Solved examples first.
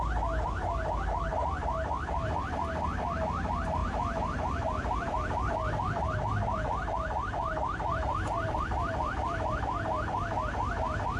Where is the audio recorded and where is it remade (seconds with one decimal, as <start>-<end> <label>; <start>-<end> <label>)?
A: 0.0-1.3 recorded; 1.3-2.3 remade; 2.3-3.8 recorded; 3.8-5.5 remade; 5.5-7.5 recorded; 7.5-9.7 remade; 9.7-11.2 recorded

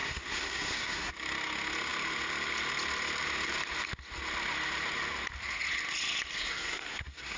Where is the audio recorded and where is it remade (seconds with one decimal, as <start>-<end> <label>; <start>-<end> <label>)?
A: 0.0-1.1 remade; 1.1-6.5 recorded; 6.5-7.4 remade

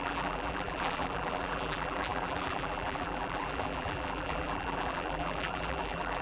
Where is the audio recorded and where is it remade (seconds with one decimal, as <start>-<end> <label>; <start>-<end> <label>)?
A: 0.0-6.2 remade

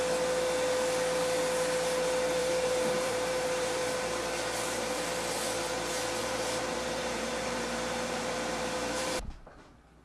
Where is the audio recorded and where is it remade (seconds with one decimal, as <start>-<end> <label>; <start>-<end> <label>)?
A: 0.0-2.4 recorded; 2.4-4.2 remade; 4.2-6.2 recorded; 6.2-9.3 remade; 9.3-10.0 recorded

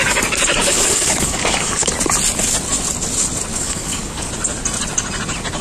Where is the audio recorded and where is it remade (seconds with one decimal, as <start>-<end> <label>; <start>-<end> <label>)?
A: 0.0-0.6 recorded; 0.6-1.9 remade; 1.9-3.5 recorded; 3.5-4.3 remade; 4.3-5.6 recorded